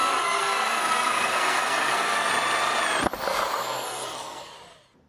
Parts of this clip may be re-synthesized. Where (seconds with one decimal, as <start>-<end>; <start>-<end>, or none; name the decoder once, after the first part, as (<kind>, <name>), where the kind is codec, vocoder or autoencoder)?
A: 0.0-2.3 (codec, SNAC); 3.6-4.5

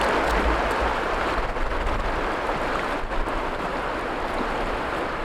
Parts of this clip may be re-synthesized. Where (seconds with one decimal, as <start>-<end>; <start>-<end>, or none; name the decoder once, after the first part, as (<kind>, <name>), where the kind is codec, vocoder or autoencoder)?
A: none